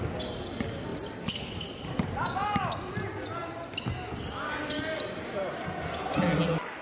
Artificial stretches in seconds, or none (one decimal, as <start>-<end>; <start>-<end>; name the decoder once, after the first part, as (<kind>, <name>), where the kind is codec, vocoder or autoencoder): none